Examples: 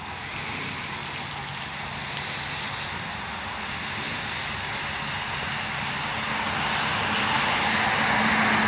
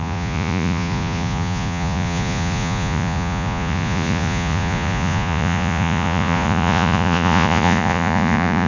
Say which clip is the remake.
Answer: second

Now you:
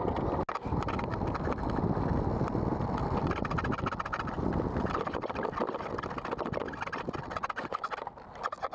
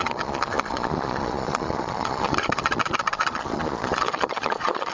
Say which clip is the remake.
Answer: second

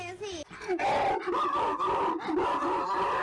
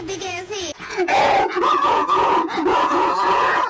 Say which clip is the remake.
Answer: second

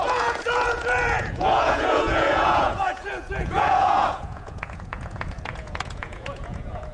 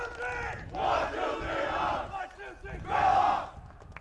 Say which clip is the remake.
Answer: first